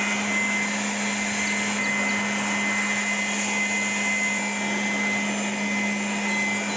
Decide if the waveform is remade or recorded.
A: recorded